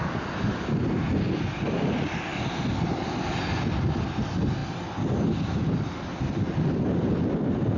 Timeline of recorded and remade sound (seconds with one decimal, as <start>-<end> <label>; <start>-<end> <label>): 0.0-7.8 recorded